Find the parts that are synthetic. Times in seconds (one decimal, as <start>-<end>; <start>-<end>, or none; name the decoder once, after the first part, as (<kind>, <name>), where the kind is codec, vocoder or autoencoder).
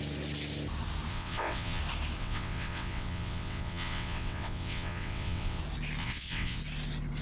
1.1-1.8 (vocoder, WaveNeXt); 2.2-5.6; 6.0-6.6